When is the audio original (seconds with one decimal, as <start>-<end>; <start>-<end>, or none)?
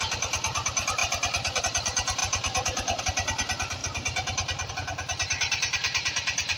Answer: 0.0-6.6